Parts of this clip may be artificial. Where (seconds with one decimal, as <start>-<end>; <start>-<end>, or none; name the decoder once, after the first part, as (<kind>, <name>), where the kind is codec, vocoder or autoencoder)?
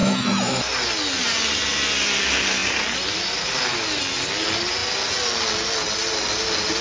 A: 0.0-0.6 (autoencoder, DAC-VAE)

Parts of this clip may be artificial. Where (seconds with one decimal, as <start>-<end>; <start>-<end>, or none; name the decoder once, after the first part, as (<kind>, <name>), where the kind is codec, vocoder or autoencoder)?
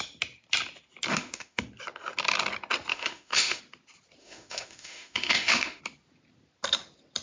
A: 1.1-1.6 (autoencoder, DAC-VAE); 2.9-3.6; 4.2-5.8